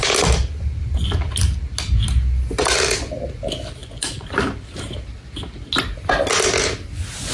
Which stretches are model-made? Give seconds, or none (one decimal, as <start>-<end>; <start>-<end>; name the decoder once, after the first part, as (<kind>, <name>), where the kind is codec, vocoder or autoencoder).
3.8-4.4 (vocoder, Vocos)